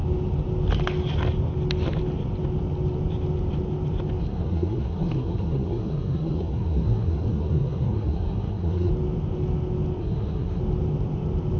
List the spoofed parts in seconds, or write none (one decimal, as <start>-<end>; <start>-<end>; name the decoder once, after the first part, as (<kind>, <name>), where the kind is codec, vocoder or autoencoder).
4.2-8.9 (codec, SNAC); 10.0-10.6